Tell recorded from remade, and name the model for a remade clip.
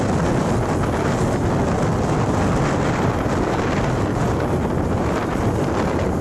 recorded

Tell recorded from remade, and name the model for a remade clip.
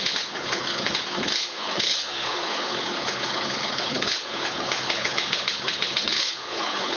remade, codec, HILCodec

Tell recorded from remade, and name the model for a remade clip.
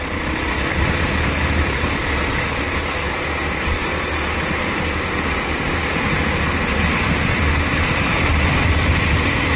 recorded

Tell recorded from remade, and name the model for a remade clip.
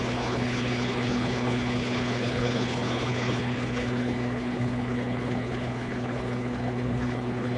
remade, codec, HILCodec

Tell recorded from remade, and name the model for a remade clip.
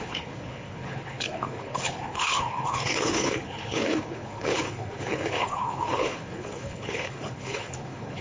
remade, codec, HILCodec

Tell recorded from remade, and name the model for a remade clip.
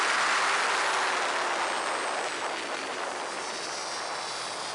recorded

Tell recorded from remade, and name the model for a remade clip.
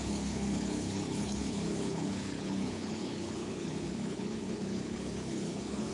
remade, codec, HILCodec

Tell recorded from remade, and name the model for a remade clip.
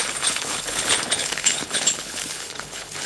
remade, codec, HILCodec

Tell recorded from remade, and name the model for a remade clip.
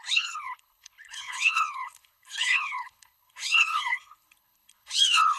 remade, codec, HILCodec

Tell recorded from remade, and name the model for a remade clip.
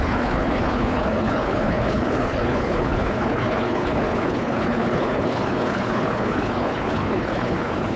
remade, codec, HILCodec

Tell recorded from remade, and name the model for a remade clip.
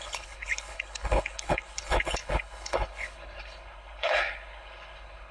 remade, codec, HILCodec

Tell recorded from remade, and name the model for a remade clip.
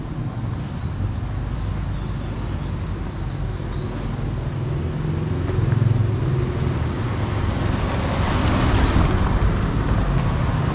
recorded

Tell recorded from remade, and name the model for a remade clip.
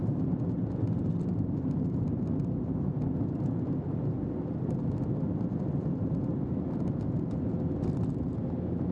recorded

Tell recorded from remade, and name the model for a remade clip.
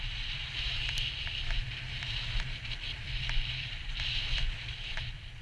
recorded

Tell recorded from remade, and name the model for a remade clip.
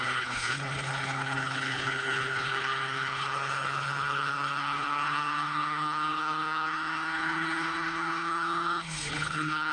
remade, codec, HILCodec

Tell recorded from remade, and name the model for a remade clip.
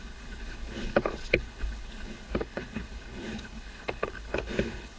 remade, codec, HILCodec